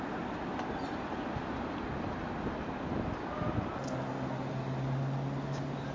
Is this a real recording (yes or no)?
yes